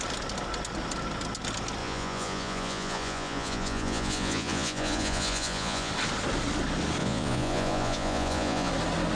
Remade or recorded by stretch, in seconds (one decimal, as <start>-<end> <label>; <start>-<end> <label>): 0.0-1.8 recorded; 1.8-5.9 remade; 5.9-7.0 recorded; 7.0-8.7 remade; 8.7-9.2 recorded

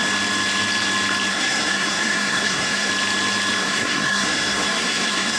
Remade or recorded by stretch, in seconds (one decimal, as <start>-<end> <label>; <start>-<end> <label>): 0.0-1.3 recorded; 1.3-2.9 remade; 2.9-3.6 recorded; 3.6-5.4 remade

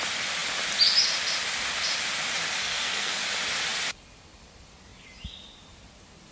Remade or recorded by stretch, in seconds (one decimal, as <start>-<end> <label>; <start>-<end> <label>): 0.0-2.6 recorded; 2.6-3.2 remade; 3.2-6.3 recorded